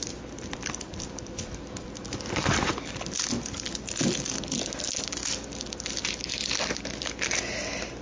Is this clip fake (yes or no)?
no